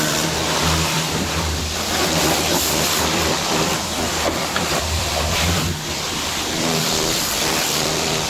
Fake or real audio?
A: fake